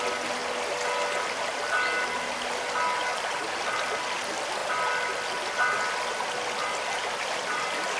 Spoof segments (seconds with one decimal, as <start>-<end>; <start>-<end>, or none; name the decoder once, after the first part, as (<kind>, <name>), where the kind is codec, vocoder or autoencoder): none